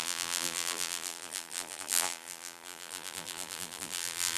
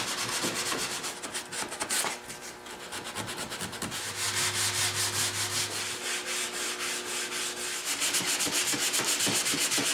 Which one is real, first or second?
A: second